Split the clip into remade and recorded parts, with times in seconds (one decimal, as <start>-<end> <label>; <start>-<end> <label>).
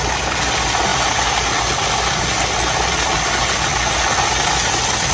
0.0-5.1 recorded